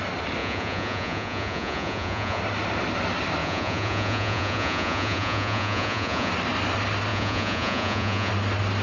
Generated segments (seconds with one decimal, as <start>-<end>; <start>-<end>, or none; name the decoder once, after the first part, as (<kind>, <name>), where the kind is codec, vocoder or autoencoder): 0.4-2.4 (vocoder, Vocos); 3.4-6.3; 7.1-8.3